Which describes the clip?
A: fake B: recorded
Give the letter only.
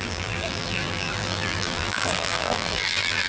A